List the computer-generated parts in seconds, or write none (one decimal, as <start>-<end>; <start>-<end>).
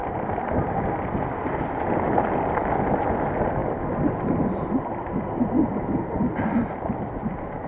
none